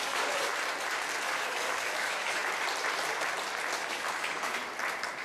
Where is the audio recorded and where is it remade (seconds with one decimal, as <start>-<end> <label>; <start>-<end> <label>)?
0.0-0.5 remade; 0.5-1.2 recorded; 1.2-2.4 remade; 2.4-3.8 recorded; 3.8-4.6 remade; 4.6-5.2 recorded